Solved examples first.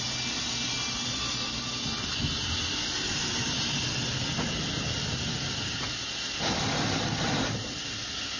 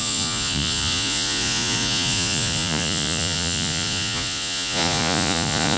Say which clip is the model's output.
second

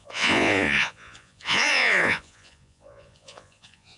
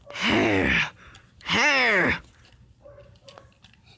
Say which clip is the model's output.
first